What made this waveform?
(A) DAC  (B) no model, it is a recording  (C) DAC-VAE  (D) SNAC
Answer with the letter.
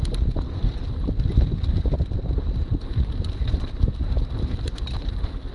B